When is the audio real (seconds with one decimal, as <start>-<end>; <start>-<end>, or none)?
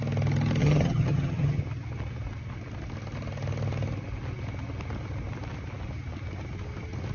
0.0-0.6; 1.6-7.1